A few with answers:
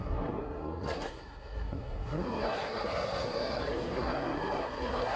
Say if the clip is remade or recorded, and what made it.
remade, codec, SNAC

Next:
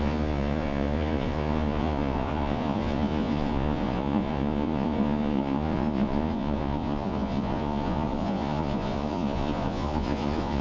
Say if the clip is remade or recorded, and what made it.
remade, vocoder, Vocos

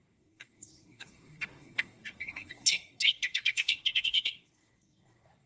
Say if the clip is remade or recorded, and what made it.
remade, codec, SNAC